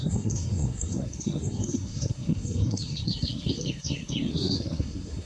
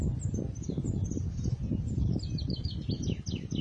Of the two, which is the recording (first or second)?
second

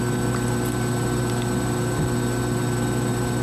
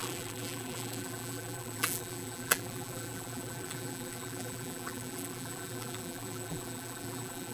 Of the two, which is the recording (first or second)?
first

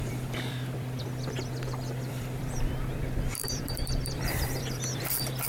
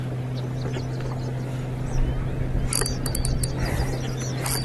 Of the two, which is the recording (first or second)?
second